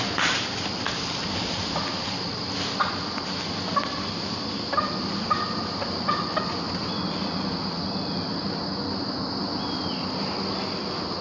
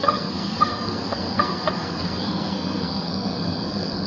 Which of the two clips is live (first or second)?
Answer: first